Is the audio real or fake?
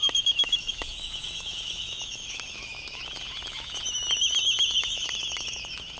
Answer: fake